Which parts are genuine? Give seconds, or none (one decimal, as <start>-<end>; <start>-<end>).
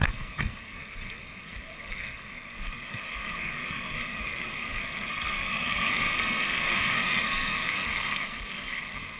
none